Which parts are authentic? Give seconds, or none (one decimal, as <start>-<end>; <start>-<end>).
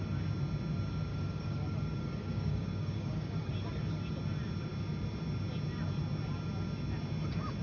0.0-1.1; 3.5-7.6